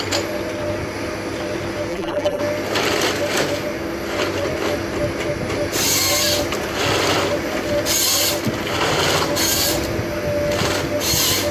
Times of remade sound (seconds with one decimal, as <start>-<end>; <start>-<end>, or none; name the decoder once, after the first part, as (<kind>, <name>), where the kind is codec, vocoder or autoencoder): 1.9-2.4 (vocoder, BigVGAN v2)